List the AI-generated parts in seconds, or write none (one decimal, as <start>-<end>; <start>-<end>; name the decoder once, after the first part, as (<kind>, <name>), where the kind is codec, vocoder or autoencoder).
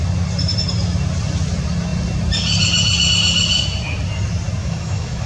4.6-5.3 (autoencoder, DAC-VAE)